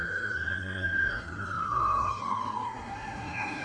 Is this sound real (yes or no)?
no